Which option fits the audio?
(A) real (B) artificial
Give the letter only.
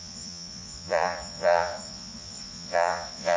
B